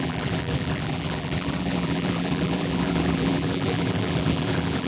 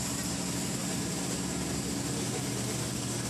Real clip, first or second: second